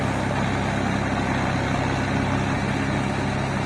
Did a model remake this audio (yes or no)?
no